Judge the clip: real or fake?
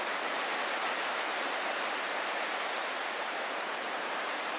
fake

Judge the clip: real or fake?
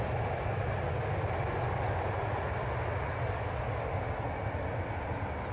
real